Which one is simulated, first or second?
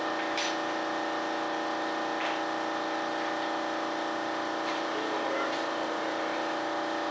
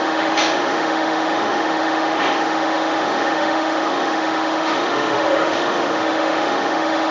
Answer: second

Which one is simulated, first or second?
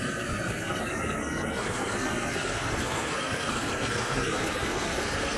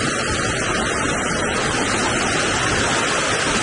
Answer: first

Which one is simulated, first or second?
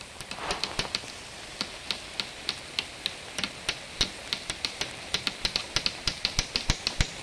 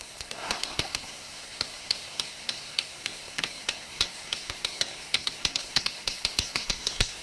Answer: second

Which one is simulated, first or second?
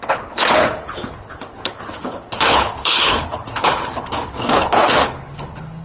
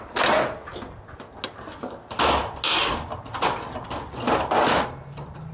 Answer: first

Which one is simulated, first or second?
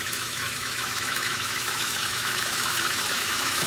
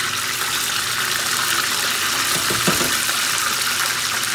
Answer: first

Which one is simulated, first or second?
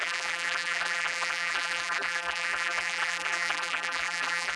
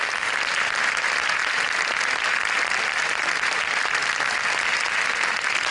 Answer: first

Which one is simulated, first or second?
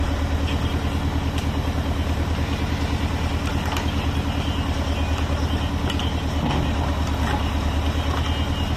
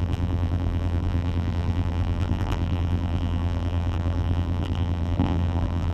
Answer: second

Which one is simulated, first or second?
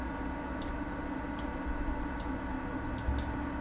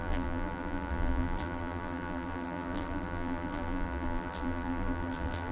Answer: second